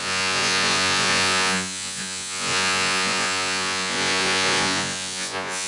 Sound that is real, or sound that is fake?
fake